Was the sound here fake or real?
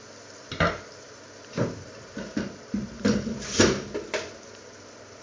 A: real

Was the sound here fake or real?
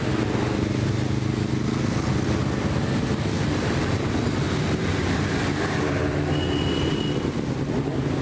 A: real